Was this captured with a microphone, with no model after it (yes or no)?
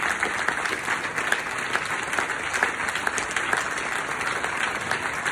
yes